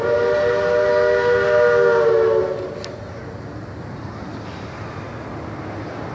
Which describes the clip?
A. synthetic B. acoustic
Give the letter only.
B